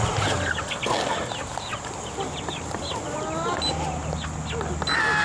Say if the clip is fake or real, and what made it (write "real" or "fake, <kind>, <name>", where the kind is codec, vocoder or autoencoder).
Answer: real